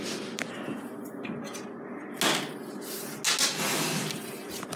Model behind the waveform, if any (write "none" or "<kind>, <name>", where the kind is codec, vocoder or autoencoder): none